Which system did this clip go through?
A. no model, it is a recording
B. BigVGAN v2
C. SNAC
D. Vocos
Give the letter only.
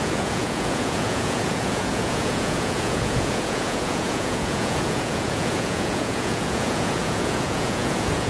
D